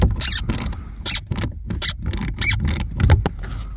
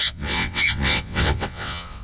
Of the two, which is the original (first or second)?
first